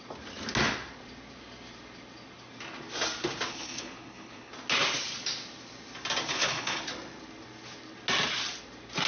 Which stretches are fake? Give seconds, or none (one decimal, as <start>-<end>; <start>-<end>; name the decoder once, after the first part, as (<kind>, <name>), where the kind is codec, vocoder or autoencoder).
3.5-4.5 (codec, HILCodec); 6.3-6.8